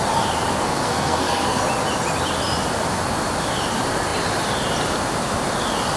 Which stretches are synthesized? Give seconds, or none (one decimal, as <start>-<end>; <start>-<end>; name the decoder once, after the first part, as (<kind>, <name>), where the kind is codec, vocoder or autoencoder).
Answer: 0.5-1.6 (codec, SNAC)